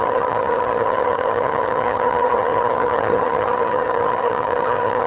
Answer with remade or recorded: remade